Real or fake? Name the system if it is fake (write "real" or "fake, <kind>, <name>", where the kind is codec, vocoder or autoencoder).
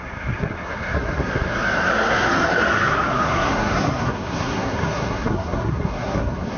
fake, codec, SNAC